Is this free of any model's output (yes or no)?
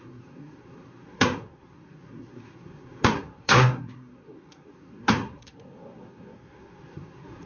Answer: no